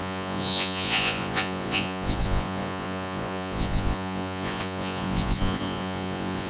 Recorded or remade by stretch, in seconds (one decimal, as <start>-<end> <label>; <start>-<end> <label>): 0.0-6.5 remade